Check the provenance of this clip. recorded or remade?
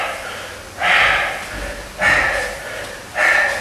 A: recorded